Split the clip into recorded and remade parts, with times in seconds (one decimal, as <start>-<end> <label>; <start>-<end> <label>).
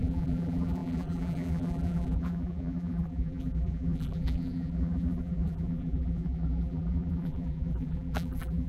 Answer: 0.0-8.7 remade